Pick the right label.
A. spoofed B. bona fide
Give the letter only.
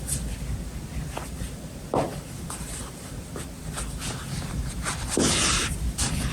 B